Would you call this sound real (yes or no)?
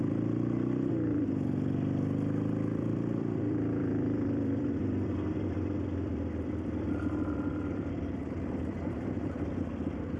no